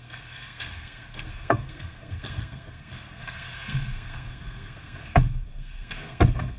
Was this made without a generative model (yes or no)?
no